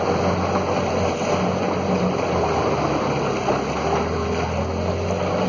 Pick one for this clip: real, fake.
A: real